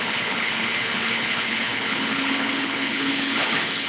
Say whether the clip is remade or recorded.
remade